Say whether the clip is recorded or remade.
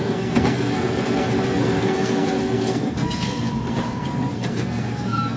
remade